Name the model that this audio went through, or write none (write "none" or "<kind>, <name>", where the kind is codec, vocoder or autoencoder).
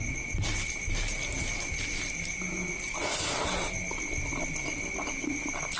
none